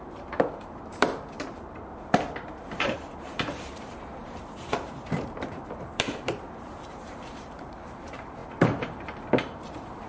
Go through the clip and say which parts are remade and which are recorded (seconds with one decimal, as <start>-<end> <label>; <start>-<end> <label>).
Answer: 0.0-10.1 remade